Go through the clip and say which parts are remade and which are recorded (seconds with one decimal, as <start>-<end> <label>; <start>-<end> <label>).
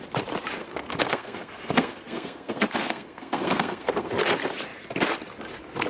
0.0-0.6 recorded; 0.6-4.1 remade; 4.1-5.9 recorded